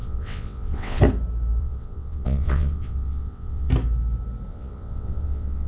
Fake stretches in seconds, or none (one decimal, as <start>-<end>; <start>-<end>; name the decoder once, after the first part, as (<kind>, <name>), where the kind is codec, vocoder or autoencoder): 0.0-1.0 (vocoder, WaveNeXt); 1.6-3.7; 4.5-5.7